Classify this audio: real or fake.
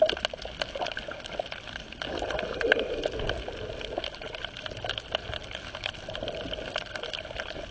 real